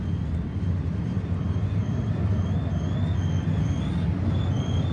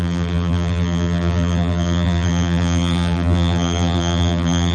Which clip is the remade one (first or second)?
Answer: second